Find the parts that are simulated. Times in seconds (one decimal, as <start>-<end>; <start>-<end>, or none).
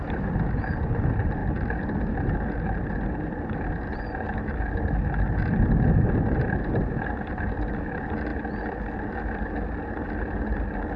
none